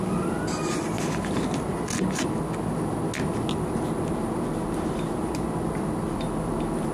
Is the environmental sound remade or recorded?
recorded